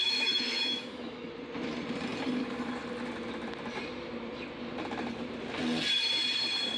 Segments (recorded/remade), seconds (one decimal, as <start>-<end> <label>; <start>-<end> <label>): 0.0-1.3 remade; 1.3-6.8 recorded